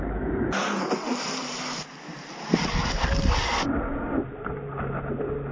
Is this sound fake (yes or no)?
no